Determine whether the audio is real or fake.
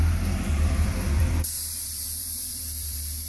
fake